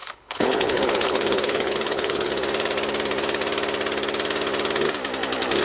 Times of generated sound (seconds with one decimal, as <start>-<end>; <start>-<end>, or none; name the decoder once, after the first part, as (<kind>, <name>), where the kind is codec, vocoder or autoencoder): 0.0-2.3 (codec, HILCodec)